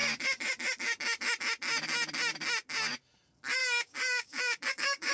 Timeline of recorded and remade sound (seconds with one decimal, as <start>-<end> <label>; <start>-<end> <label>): 0.0-3.6 recorded; 3.6-5.1 remade